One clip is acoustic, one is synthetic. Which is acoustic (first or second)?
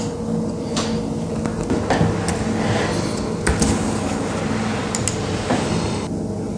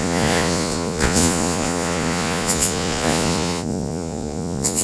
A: first